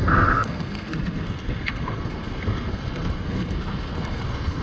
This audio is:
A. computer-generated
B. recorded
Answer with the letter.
A